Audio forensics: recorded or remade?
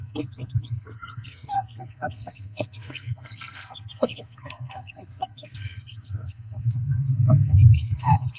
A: remade